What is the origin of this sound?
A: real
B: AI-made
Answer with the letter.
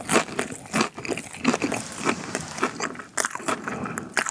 A